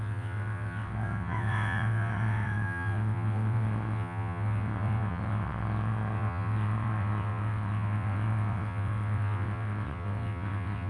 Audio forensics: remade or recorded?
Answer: remade